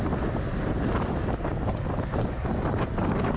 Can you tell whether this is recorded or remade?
recorded